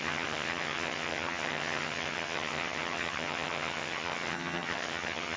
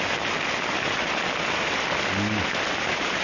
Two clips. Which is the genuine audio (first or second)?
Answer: second